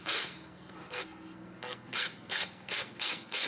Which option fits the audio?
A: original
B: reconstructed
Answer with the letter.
B